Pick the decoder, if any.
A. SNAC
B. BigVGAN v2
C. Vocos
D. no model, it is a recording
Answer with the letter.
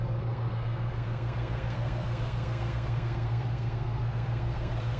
A